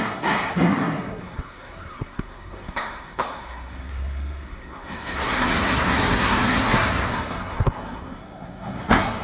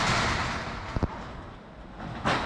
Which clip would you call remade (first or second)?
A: first